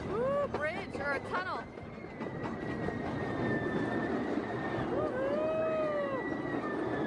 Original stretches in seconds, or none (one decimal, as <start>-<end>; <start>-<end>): 0.0-7.1